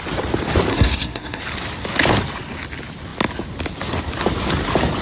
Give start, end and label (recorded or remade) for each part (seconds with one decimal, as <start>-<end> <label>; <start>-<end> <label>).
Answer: 0.0-0.7 recorded; 0.7-1.4 remade; 1.4-5.0 recorded